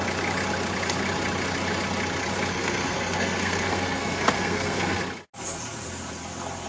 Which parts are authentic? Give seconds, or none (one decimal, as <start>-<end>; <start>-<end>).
0.0-2.5; 5.0-6.7